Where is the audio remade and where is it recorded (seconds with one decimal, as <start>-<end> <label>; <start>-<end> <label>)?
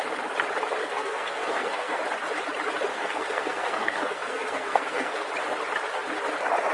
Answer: 0.0-0.8 recorded; 0.8-2.0 remade; 2.0-2.9 recorded; 2.9-5.3 remade; 5.3-6.7 recorded